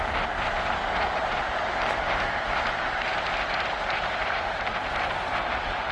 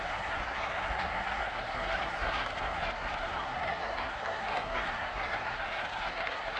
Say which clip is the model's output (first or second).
second